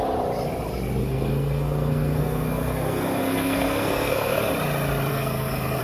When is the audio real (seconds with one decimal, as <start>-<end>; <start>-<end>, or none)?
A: 0.0-1.0; 4.5-5.1